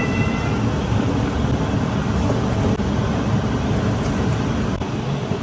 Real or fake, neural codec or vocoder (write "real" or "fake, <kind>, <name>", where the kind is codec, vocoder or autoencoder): real